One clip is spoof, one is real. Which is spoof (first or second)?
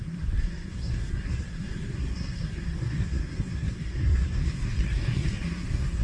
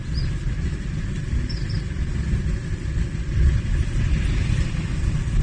first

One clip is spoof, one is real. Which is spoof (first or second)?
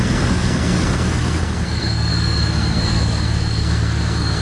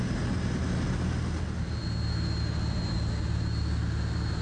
first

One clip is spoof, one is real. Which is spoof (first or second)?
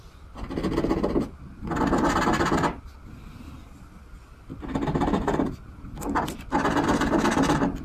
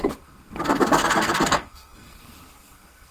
second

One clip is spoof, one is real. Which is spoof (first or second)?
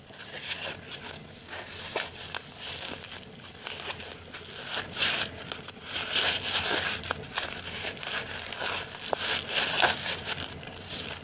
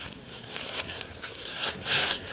second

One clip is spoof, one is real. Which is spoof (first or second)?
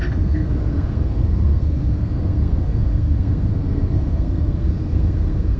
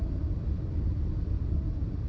first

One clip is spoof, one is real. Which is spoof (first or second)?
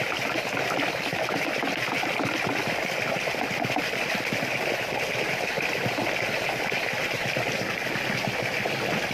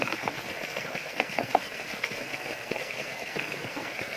second